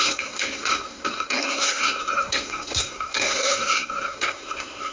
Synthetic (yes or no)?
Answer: yes